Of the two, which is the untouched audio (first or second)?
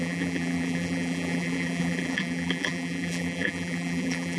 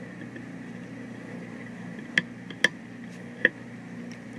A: second